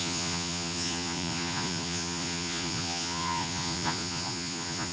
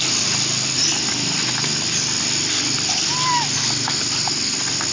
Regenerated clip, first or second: first